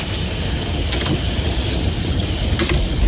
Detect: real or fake real